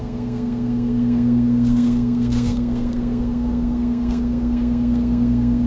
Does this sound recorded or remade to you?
remade